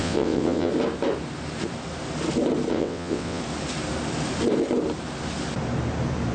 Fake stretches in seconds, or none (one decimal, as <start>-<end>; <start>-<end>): 0.0-0.7; 2.7-3.4